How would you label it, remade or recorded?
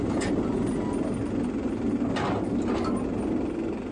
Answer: recorded